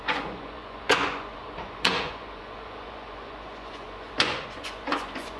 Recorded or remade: remade